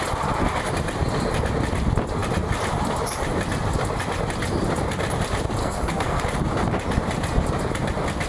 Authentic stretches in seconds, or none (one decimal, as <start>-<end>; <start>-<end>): 0.0-5.6; 6.2-8.3